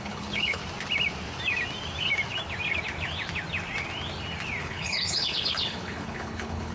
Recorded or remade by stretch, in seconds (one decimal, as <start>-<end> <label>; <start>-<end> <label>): 0.0-0.6 remade; 0.6-4.6 recorded; 4.6-6.7 remade